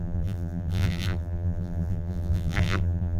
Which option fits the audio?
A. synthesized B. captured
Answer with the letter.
A